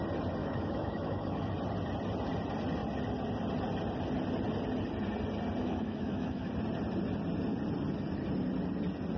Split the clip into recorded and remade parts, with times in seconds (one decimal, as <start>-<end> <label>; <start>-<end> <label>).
0.0-0.4 recorded; 0.4-1.5 remade; 1.5-5.6 recorded; 5.6-6.5 remade; 6.5-9.2 recorded